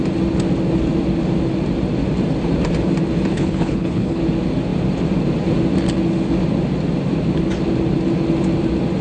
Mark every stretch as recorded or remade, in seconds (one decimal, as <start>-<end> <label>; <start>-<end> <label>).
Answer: 0.0-3.3 recorded; 3.3-4.2 remade; 4.2-9.0 recorded